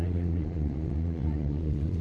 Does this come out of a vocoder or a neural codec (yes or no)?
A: yes